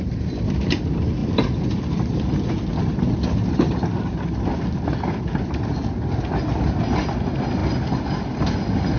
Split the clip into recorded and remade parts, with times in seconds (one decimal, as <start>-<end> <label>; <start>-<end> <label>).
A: 0.0-9.0 recorded